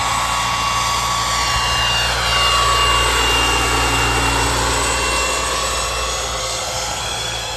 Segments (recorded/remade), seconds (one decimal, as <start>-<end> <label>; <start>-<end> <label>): 0.0-6.4 recorded; 6.4-7.6 remade